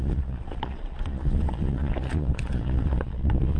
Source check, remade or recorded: remade